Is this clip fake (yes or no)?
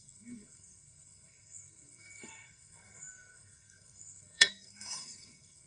yes